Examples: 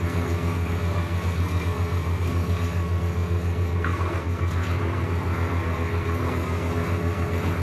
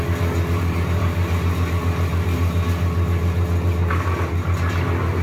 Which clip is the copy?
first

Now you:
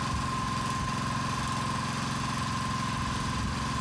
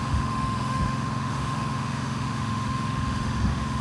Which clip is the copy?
second